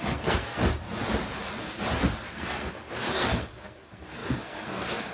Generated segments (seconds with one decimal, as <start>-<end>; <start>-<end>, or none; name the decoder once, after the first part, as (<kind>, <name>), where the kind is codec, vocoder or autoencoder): 0.0-0.6 (codec, SNAC); 2.3-5.1